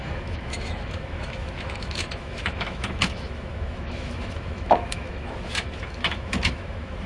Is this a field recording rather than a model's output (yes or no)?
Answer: no